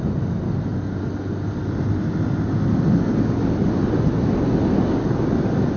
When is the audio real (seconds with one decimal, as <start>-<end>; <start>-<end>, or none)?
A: 0.0-5.8